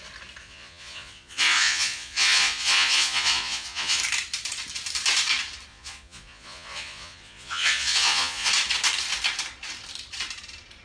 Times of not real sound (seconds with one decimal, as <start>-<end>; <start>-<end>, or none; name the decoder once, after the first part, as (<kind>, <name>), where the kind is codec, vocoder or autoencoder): 0.4-4.0 (vocoder, Vocos); 5.7-8.5